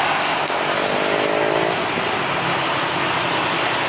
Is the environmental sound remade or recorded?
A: recorded